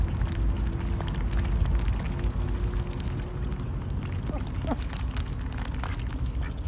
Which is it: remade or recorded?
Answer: recorded